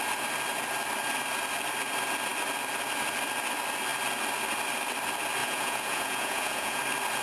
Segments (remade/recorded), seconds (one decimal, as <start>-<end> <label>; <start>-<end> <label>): 0.0-5.4 recorded; 5.4-6.8 remade; 6.8-7.2 recorded